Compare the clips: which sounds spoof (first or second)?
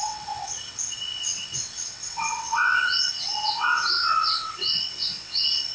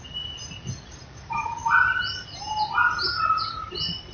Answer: first